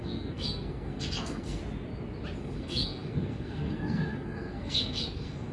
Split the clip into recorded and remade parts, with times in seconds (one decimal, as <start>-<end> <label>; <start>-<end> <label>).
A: 0.0-1.6 remade; 1.6-2.4 recorded; 2.4-5.5 remade